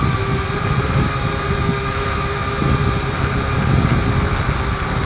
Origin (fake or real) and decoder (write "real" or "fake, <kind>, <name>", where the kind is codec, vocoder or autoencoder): real